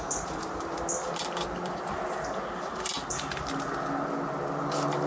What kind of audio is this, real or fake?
real